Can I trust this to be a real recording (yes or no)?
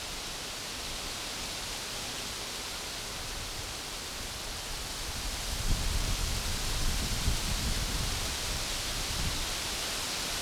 yes